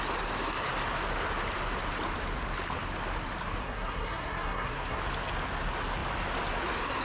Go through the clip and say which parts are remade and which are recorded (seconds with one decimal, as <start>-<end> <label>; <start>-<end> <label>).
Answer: 0.0-3.6 recorded; 3.6-5.0 remade; 5.0-7.0 recorded